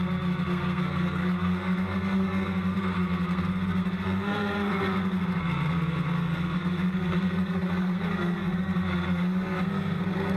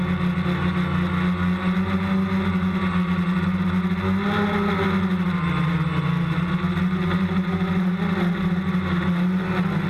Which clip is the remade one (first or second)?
first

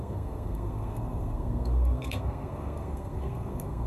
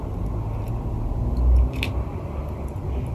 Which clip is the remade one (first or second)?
first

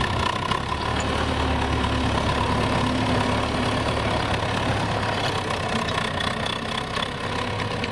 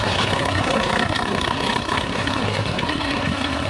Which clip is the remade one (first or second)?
second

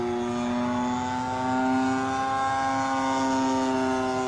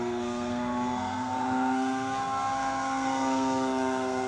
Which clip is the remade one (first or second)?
second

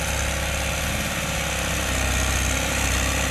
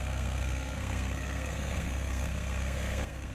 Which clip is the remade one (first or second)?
second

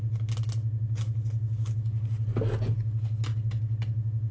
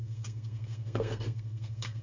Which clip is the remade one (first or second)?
second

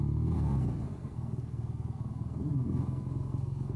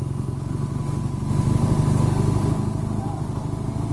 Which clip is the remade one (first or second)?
first